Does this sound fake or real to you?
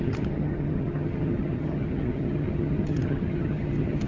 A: fake